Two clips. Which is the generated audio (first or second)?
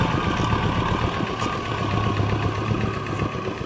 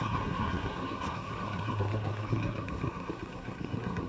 second